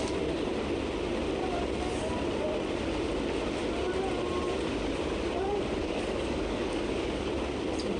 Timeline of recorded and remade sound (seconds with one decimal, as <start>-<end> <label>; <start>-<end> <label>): 0.0-5.8 recorded; 5.8-7.3 remade; 7.3-8.0 recorded

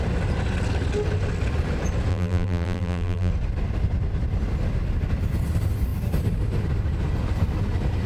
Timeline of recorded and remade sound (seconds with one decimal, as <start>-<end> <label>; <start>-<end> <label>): 0.0-2.1 recorded; 2.1-3.3 remade; 3.3-8.1 recorded

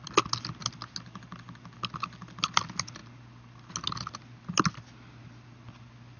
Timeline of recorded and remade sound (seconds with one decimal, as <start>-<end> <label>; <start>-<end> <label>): 0.0-6.2 recorded

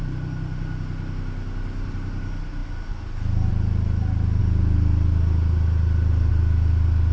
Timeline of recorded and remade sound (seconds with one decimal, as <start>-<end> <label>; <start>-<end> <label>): 0.0-7.1 recorded

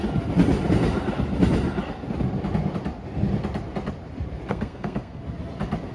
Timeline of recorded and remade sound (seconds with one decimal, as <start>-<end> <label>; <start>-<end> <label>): 0.0-4.5 recorded; 4.5-5.2 remade; 5.2-5.9 recorded

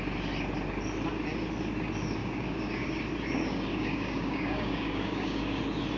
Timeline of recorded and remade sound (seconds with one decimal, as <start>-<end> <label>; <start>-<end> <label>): 0.0-2.2 recorded; 2.2-3.0 remade; 3.0-3.7 recorded; 3.7-5.6 remade; 5.6-6.0 recorded

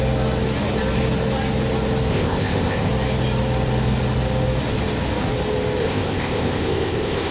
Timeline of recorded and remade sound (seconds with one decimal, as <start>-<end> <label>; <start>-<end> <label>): 0.0-2.1 recorded; 2.1-2.9 remade; 2.9-5.8 recorded; 5.8-7.3 remade

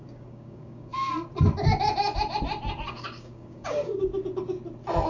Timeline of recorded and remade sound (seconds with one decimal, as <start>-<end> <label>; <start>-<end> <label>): 0.0-0.9 remade; 0.9-2.9 recorded; 2.9-4.1 remade; 4.1-5.1 recorded